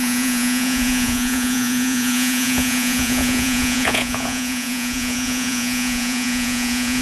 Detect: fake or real fake